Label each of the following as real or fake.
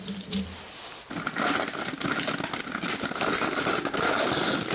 real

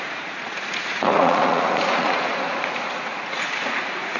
fake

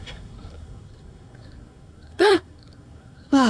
fake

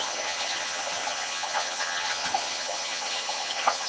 fake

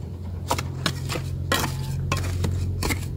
real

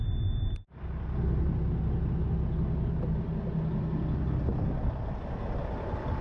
real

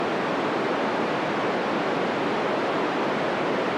real